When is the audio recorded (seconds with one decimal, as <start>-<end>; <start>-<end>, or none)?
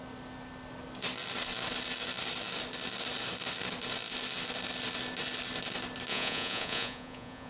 0.0-6.1